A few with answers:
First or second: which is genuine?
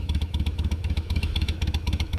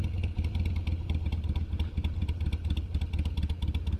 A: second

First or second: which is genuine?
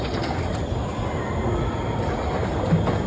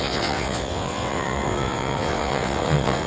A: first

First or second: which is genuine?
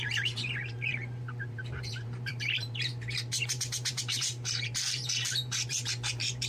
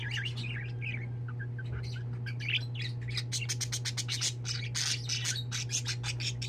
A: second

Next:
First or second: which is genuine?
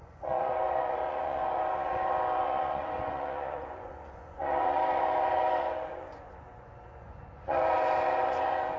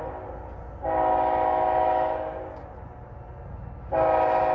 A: second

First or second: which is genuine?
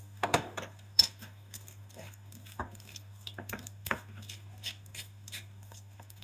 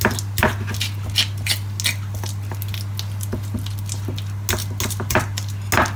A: second